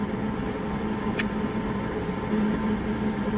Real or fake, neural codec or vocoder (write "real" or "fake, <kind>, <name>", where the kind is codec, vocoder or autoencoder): real